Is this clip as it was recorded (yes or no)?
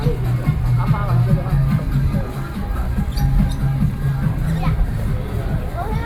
yes